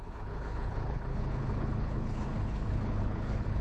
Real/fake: fake